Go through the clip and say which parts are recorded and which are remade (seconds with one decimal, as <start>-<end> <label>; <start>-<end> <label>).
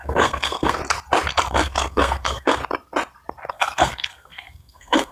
0.0-0.8 remade; 0.8-1.5 recorded; 1.5-2.6 remade; 2.6-3.5 recorded; 3.5-5.1 remade